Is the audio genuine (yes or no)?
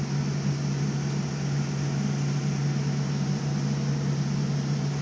yes